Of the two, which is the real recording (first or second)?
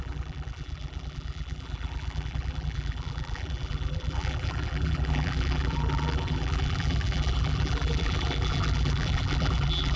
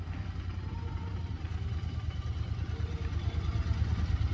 second